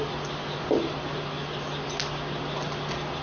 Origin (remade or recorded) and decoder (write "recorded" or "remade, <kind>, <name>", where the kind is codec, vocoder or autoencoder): recorded